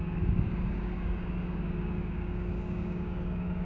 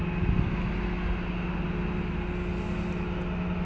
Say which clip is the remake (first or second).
first